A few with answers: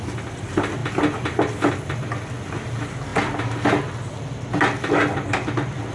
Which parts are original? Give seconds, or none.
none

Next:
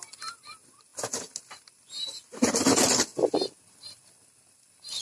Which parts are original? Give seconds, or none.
0.0-5.0

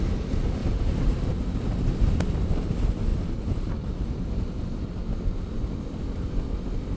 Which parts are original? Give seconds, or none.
0.0-0.6; 1.3-3.1; 4.3-7.0

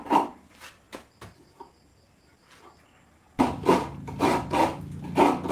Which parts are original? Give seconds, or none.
0.0-5.5

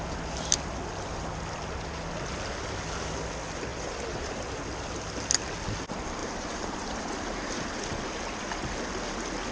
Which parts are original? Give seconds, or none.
0.0-3.7; 4.5-6.2; 7.7-9.5

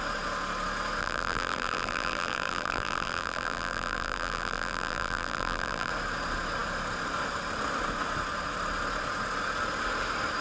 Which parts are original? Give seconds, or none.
0.0-1.0; 5.9-10.4

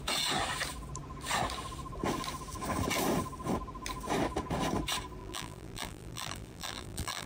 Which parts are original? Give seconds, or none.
0.0-5.2